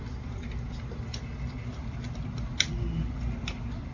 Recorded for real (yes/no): yes